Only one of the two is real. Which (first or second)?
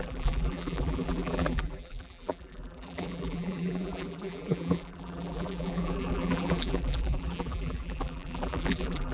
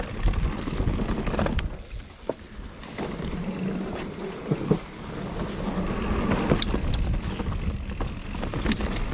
second